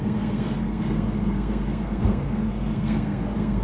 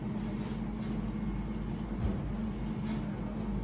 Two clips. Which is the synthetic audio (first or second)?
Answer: first